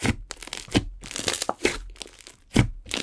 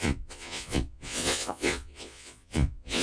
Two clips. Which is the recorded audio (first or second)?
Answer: first